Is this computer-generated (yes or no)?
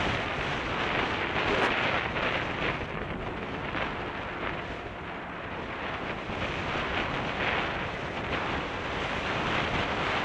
no